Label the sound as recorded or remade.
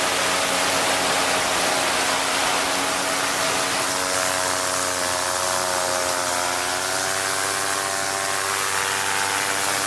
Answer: recorded